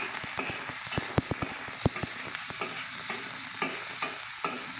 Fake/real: real